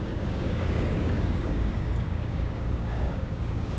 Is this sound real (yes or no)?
no